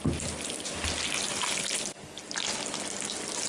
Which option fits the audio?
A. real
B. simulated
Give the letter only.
A